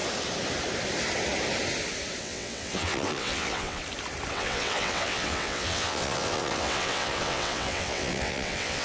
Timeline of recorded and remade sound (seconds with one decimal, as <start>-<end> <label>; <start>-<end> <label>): 0.0-2.2 recorded; 2.2-3.8 remade; 3.8-4.3 recorded; 4.3-8.8 remade